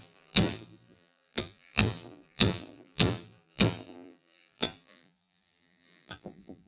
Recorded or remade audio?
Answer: remade